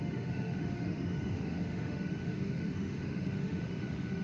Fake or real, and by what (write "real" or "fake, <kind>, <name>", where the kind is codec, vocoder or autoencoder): fake, autoencoder, DAC-VAE